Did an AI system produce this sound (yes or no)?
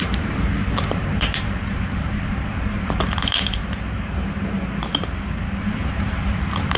yes